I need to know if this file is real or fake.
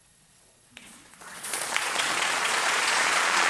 fake